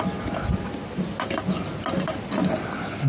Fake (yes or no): no